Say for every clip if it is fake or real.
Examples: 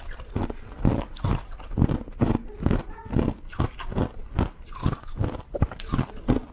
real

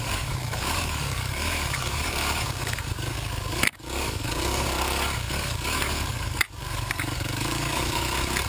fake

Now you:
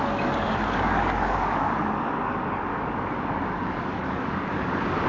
fake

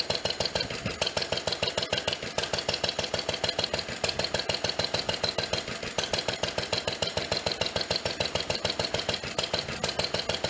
real